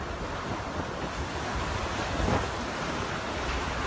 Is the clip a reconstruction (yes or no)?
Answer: yes